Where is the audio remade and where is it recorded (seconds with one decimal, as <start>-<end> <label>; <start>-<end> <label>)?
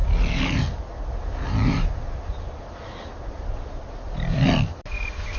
0.0-5.4 recorded